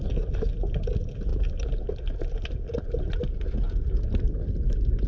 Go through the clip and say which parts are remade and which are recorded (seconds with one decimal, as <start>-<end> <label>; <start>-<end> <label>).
0.0-5.1 recorded